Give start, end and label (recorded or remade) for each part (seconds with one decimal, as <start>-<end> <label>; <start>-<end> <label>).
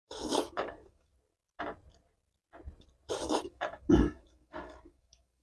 0.0-1.1 remade; 1.1-3.1 recorded; 3.1-5.4 remade